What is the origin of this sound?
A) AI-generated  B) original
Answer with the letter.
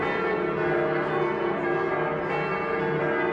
B